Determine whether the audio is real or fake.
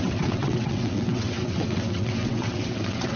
fake